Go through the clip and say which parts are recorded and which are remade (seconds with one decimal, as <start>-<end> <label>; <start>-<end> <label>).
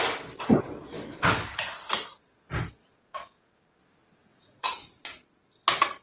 0.0-2.8 recorded; 2.8-3.6 remade; 3.6-4.3 recorded; 4.3-4.8 remade; 4.8-6.0 recorded